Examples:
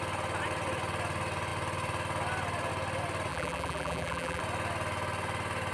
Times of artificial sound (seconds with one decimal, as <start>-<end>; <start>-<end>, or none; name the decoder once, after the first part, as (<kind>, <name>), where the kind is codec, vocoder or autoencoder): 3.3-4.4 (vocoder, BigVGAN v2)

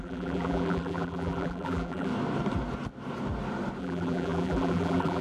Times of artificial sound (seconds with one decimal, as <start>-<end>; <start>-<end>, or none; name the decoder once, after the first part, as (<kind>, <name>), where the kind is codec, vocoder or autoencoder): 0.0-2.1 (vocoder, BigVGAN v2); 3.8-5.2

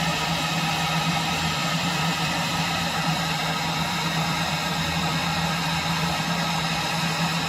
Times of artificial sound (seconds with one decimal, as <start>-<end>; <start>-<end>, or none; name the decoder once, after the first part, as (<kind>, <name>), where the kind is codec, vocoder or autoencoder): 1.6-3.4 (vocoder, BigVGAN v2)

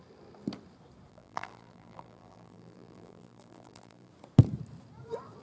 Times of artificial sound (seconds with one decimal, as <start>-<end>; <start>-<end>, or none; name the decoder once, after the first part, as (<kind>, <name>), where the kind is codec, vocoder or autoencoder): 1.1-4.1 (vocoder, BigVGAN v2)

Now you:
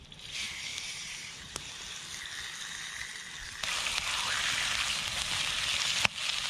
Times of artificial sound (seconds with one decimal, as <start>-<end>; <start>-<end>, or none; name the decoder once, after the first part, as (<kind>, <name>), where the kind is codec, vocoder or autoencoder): 0.7-1.7 (vocoder, BigVGAN v2)

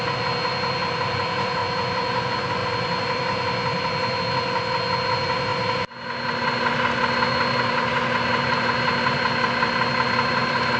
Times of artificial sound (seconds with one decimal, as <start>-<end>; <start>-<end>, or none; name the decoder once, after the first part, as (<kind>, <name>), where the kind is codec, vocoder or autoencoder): none